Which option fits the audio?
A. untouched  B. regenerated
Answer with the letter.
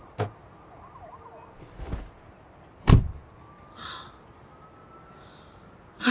A